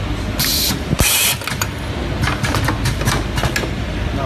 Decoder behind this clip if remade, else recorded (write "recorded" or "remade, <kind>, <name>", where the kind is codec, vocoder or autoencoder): recorded